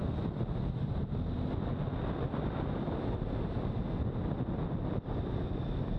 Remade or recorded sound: recorded